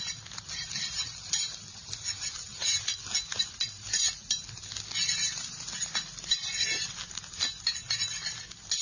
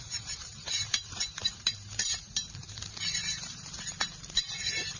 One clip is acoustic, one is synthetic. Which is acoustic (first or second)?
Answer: first